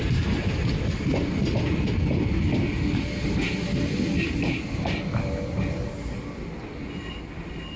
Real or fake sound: real